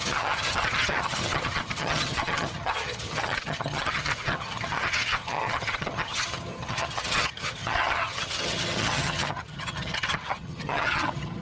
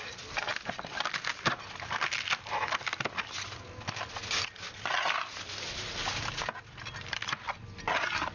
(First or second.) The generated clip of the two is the first